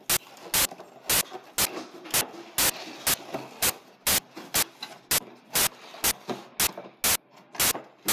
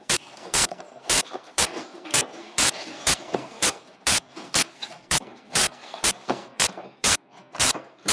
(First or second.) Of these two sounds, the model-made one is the second